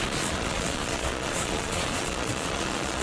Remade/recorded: remade